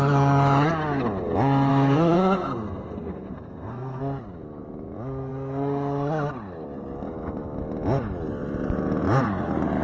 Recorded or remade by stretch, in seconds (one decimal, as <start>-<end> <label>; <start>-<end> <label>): 0.0-1.7 recorded; 1.7-4.0 remade; 4.0-9.8 recorded